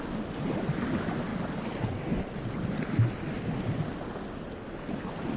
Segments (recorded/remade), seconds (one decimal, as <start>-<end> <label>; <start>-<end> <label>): 0.0-5.4 recorded